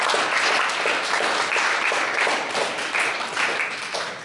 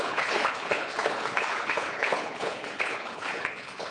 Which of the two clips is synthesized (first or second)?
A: second